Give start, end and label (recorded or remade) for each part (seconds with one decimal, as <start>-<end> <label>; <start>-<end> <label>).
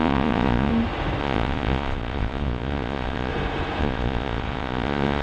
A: 0.0-0.7 remade; 0.7-1.2 recorded; 1.2-3.3 remade; 3.3-3.8 recorded; 3.8-5.2 remade